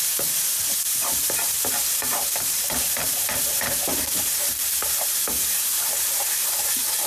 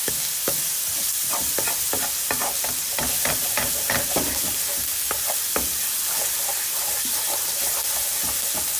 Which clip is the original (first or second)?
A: second